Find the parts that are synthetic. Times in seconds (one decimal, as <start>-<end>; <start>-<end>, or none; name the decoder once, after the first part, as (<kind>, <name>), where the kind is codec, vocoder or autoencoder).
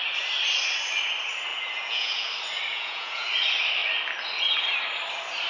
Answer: 1.5-2.3 (vocoder, Vocos); 2.7-3.3